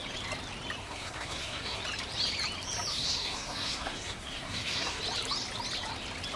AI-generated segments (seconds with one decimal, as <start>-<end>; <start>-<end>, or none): 0.8-1.8; 2.9-5.0